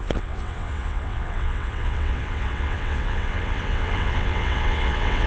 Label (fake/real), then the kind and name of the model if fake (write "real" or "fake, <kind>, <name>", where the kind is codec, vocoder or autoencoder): fake, vocoder, WaveNeXt